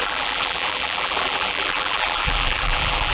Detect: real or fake fake